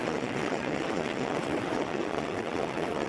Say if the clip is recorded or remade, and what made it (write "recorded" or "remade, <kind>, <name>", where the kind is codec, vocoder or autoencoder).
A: remade, vocoder, WaveNeXt